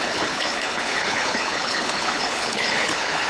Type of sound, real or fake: fake